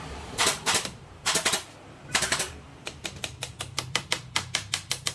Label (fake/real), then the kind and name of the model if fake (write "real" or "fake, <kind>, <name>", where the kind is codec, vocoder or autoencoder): fake, vocoder, BigVGAN v2